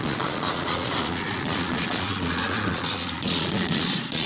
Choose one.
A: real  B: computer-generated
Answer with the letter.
B